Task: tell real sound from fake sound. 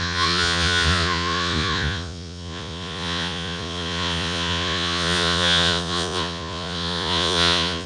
fake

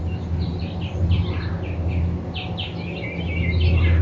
real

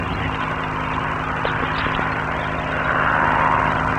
real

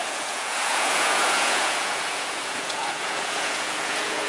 fake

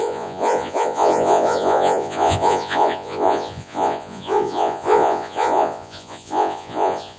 fake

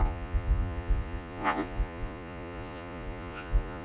fake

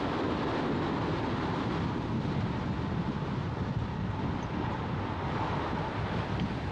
real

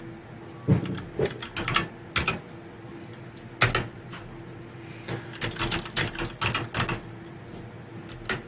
real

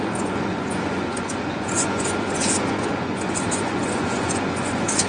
fake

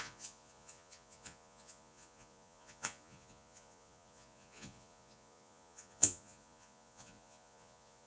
fake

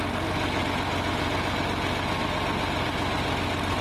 real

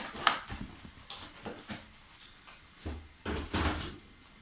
real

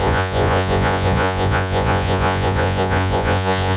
fake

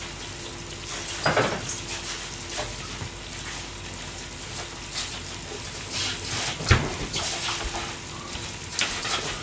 real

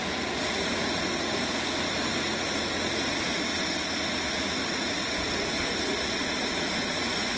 fake